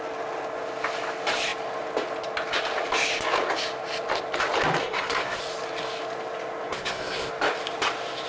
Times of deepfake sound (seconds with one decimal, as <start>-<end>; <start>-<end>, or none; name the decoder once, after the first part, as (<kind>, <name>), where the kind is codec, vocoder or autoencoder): 4.8-5.4 (codec, SNAC); 6.7-7.3